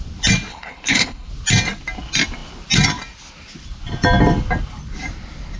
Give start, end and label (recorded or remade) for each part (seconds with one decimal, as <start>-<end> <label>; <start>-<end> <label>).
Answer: 0.0-0.5 recorded; 0.5-1.3 remade; 1.3-5.6 recorded